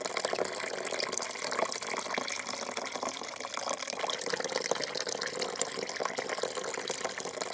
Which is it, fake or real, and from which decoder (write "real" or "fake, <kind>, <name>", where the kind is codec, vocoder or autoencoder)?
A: real